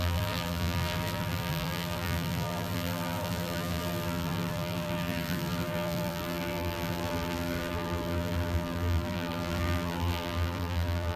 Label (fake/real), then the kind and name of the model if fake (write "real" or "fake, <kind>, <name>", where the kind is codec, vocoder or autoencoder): fake, vocoder, BigVGAN v2